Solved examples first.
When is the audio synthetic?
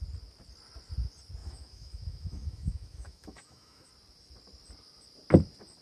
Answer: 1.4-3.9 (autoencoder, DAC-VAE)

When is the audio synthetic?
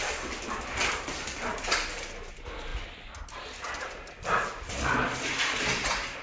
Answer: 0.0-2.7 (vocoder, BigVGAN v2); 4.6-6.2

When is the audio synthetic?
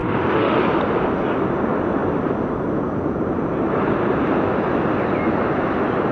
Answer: 0.0-0.6 (autoencoder, DAC-VAE)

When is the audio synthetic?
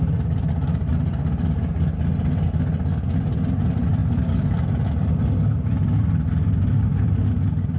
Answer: none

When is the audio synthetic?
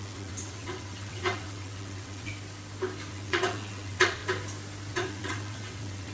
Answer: 0.0-2.3 (vocoder, WaveNeXt); 3.1-4.2; 4.9-6.1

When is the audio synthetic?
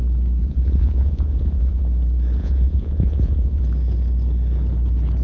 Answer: 0.4-1.8 (vocoder, Vocos); 2.4-3.6